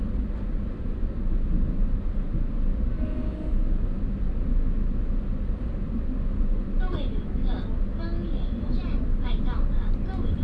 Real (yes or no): yes